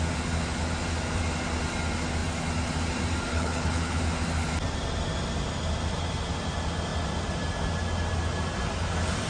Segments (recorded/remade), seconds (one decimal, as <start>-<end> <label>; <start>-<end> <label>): 0.0-3.3 recorded; 3.3-4.0 remade; 4.0-9.3 recorded